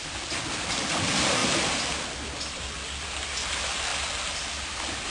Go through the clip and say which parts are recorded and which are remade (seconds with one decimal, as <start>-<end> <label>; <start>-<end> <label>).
0.0-5.1 recorded